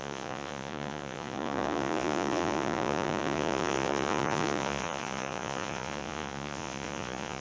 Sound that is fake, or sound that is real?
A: fake